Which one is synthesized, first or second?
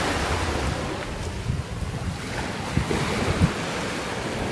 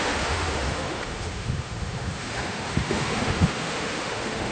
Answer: second